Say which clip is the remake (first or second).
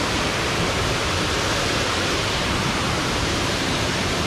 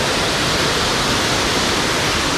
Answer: first